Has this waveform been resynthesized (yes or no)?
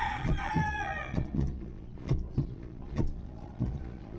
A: yes